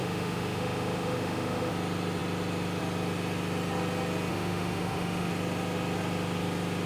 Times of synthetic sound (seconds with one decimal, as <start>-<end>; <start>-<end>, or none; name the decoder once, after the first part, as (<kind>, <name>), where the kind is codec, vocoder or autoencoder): 0.0-1.7 (autoencoder, DAC-VAE); 4.3-5.3